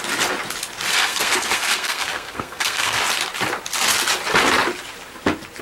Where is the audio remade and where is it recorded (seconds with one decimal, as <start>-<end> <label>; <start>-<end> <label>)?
0.0-0.9 recorded; 0.9-3.0 remade; 3.0-5.6 recorded